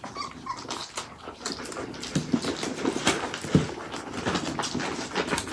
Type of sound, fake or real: real